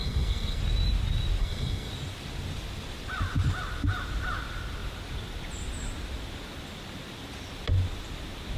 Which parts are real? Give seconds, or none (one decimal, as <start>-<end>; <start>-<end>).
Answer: 0.6-1.4; 1.9-8.6